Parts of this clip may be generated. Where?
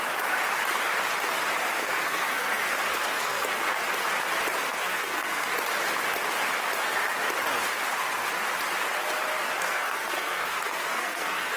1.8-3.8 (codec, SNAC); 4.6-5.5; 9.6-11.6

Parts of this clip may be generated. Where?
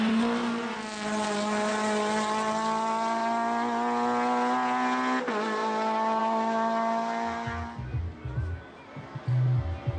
none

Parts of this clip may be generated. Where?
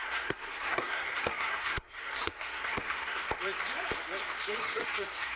0.0-3.2 (codec, SNAC); 4.6-5.4